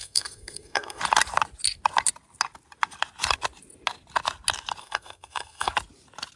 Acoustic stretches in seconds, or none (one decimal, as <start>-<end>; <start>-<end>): 1.0-4.8; 5.7-6.4